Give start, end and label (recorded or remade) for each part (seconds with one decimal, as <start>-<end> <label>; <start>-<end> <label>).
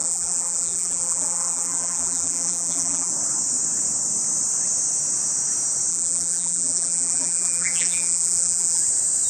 0.0-3.1 remade; 3.1-5.9 recorded; 5.9-8.8 remade; 8.8-9.3 recorded